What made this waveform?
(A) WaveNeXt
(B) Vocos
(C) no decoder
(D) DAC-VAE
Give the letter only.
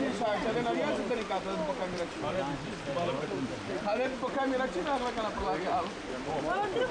C